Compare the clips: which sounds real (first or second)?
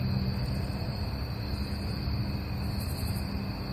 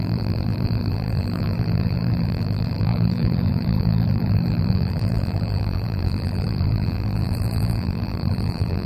first